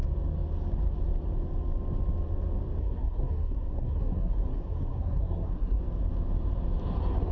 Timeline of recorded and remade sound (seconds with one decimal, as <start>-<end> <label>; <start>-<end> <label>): 0.0-2.8 recorded; 2.8-5.8 remade; 5.8-7.3 recorded